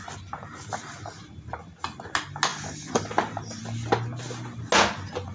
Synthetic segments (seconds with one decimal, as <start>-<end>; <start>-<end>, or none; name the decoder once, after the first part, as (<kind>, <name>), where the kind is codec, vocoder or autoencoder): 2.5-3.6 (vocoder, BigVGAN v2)